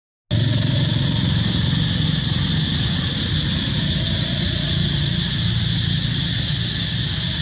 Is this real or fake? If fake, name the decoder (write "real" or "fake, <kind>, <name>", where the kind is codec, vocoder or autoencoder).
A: real